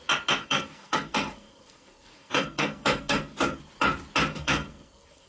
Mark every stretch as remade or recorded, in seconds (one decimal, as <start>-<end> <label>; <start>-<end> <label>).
0.0-0.4 recorded; 0.4-3.6 remade; 3.6-4.3 recorded; 4.3-5.3 remade